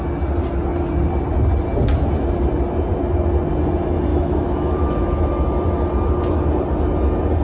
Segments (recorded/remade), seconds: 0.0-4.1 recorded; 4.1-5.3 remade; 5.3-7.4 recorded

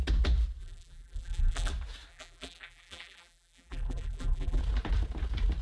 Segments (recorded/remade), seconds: 0.0-0.6 recorded; 0.6-1.7 remade; 1.7-2.1 recorded; 2.1-4.6 remade; 4.6-5.6 recorded